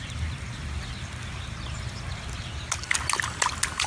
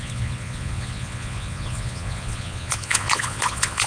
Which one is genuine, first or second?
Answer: first